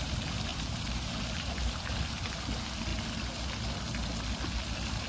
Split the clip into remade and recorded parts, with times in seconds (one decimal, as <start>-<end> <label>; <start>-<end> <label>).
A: 0.0-0.5 recorded; 0.5-2.3 remade; 2.3-5.1 recorded